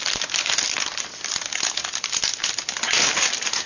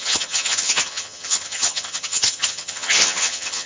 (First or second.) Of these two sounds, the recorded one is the first